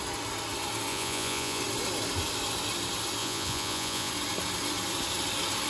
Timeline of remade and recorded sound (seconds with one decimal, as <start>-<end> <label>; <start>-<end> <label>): 0.0-0.9 recorded; 0.9-1.6 remade; 1.6-3.2 recorded; 3.2-4.1 remade; 4.1-5.7 recorded